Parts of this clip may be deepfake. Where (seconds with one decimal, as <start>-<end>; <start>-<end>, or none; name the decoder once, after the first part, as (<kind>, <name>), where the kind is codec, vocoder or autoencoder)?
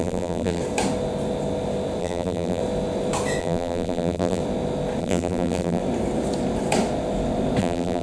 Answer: 0.0-0.6 (vocoder, BigVGAN v2); 2.0-2.6; 3.4-4.4; 5.0-5.8; 7.6-8.0